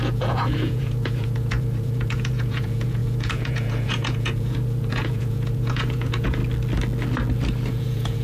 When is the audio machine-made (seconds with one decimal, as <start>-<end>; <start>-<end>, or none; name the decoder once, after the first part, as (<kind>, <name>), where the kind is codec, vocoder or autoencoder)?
0.0-6.4 (vocoder, Vocos); 7.7-8.2